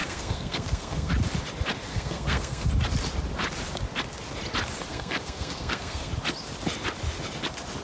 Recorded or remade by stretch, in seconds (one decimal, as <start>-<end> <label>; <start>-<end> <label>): 0.0-1.1 remade; 1.1-1.9 recorded; 1.9-2.7 remade; 2.7-4.9 recorded; 4.9-6.1 remade; 6.1-7.8 recorded